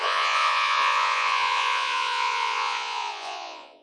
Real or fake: fake